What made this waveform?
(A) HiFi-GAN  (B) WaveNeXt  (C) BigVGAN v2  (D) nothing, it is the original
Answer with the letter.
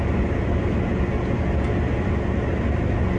D